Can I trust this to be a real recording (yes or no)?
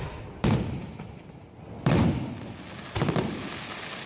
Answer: yes